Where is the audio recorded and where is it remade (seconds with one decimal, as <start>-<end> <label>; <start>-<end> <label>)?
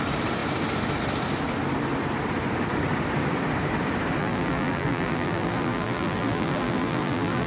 0.0-4.2 recorded; 4.2-7.5 remade